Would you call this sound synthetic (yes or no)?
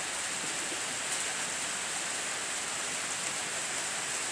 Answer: yes